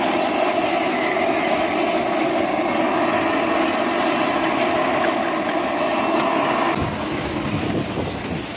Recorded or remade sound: recorded